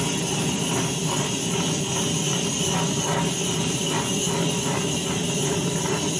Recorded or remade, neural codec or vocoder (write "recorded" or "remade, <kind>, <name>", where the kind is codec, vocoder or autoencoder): recorded